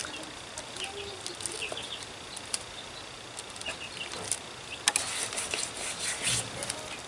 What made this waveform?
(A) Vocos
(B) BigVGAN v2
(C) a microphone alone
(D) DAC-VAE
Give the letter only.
C